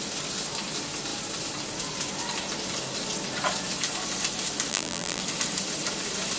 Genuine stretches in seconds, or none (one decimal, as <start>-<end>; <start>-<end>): 0.0-4.7; 5.2-6.4